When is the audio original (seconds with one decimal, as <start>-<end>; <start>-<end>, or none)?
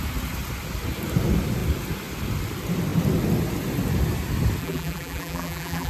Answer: 0.0-4.6